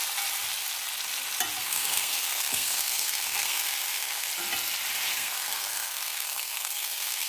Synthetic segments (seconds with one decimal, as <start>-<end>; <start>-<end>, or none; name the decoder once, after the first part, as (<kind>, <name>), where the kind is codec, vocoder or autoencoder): 1.6-4.3 (codec, SNAC); 5.1-7.3